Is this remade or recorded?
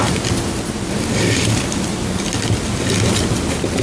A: recorded